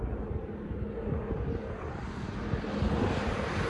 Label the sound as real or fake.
real